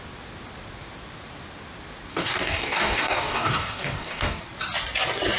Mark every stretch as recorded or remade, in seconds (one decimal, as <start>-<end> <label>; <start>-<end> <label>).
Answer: 0.0-2.1 recorded; 2.1-4.4 remade; 4.4-5.4 recorded